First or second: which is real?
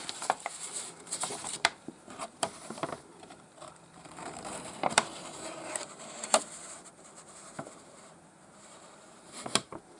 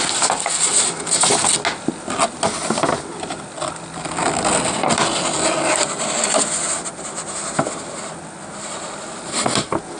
second